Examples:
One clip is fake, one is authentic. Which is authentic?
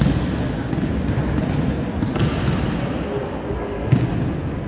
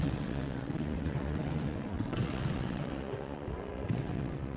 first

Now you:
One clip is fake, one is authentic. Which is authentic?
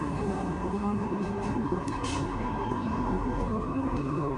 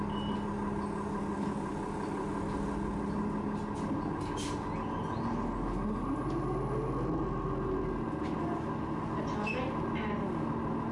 second